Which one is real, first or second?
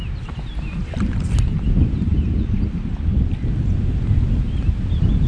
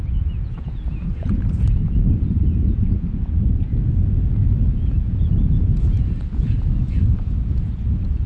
first